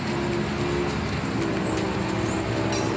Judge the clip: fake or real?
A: real